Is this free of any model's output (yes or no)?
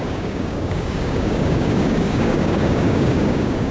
no